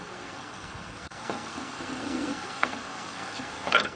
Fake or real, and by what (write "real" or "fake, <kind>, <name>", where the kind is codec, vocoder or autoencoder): fake, codec, SNAC